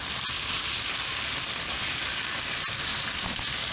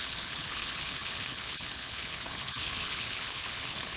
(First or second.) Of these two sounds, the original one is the first